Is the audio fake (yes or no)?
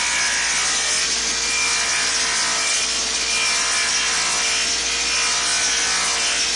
no